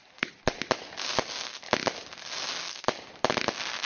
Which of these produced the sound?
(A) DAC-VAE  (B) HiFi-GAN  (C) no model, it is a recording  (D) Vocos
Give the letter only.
C